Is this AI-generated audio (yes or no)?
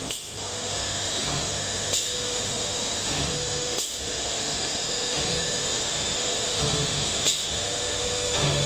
yes